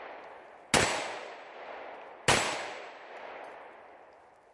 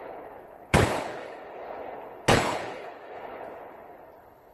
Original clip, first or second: first